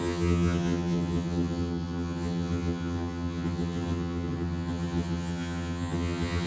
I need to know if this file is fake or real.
fake